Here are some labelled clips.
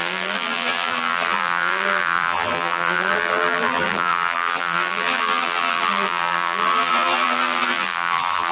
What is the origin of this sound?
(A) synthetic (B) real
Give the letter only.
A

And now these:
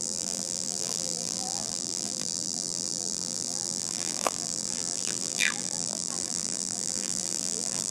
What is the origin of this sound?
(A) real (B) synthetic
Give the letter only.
B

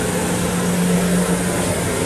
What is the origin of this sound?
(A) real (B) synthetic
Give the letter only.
A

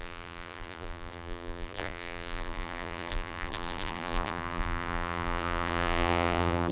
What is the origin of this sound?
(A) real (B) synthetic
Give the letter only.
B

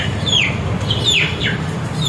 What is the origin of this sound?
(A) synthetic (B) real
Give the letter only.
A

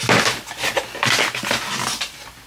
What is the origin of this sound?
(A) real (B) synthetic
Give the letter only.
A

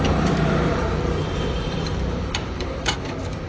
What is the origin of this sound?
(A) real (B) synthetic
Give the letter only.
B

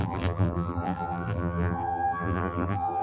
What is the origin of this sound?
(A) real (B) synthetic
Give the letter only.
B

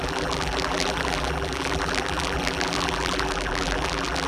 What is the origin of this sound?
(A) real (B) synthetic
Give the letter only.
B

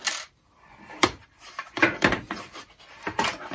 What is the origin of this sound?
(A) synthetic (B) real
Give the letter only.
A